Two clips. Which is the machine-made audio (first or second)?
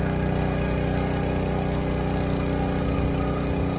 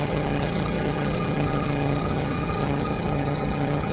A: second